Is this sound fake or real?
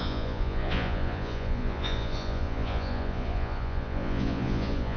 fake